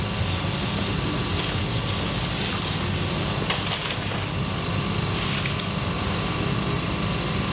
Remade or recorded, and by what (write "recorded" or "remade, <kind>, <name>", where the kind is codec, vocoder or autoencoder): recorded